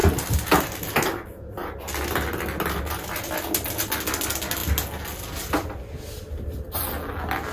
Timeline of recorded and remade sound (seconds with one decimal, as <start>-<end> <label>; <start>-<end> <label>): 0.0-7.5 recorded